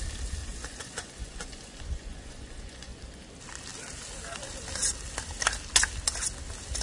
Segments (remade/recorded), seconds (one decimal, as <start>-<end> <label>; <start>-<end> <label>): 0.0-0.4 recorded; 0.4-3.0 remade; 3.0-6.8 recorded